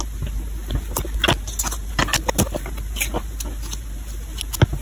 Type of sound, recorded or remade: recorded